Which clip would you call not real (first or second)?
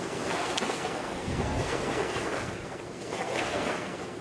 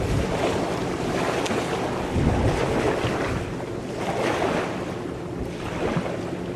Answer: first